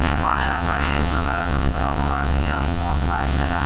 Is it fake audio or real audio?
fake